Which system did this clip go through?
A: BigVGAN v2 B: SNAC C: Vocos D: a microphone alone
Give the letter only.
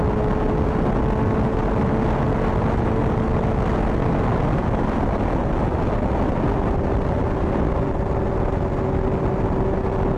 D